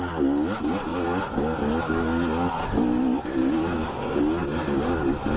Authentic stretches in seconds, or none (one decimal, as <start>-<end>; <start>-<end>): 0.0-3.4; 4.2-5.4